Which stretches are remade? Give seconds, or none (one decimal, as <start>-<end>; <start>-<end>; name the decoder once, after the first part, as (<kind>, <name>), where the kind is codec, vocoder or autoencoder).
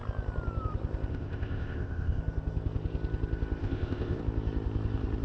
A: 1.1-2.2 (codec, ZipCodec); 3.6-4.2